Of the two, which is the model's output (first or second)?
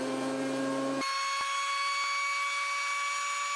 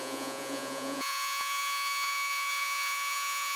second